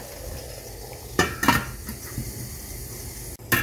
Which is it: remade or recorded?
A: recorded